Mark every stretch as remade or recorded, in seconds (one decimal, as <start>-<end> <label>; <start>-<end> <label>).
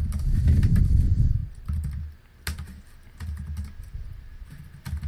0.0-5.1 recorded